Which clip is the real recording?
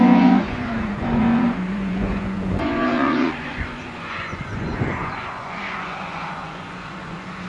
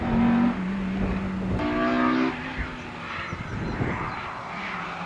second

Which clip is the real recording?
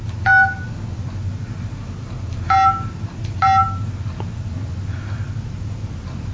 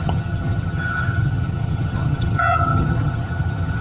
first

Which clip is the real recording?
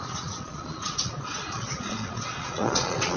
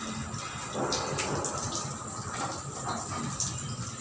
second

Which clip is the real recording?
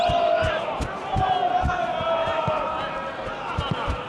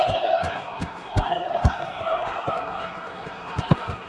first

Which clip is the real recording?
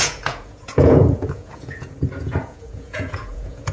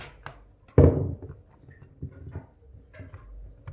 second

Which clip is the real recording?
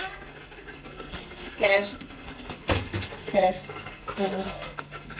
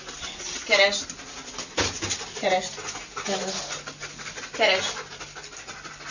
second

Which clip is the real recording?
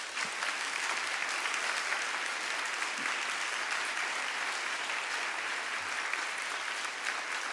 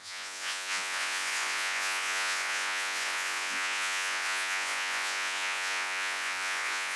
first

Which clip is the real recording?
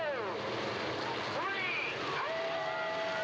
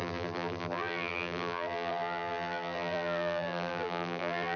first